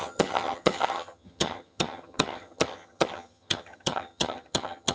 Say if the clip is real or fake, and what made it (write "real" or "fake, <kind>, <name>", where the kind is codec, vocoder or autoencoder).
fake, vocoder, HiFi-GAN